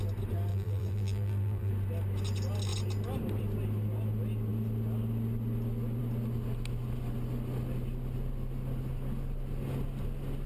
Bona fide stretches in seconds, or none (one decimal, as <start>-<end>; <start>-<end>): 0.0-0.5; 1.7-10.5